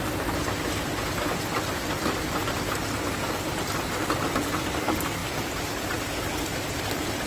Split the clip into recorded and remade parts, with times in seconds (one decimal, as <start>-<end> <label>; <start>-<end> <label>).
0.0-7.3 recorded